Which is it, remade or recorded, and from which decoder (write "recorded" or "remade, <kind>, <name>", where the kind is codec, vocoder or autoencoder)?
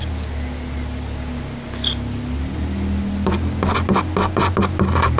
recorded